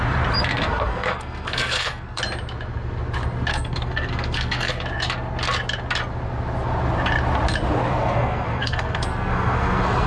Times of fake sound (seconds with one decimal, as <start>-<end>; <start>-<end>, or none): 0.5-2.2; 3.5-4.7; 7.9-10.1